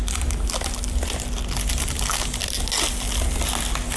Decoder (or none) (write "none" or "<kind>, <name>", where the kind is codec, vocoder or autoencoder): none